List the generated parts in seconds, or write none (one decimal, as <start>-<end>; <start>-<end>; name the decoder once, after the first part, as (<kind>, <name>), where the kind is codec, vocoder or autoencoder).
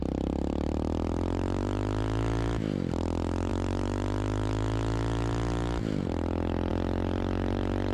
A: none